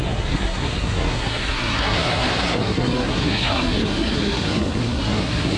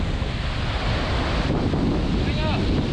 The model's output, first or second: first